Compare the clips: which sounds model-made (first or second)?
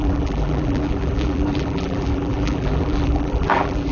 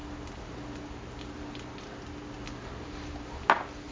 first